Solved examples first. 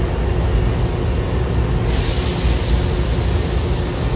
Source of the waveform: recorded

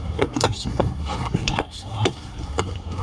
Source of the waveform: remade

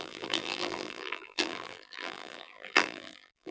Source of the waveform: remade